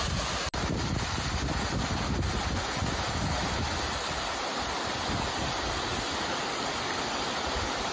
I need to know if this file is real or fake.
real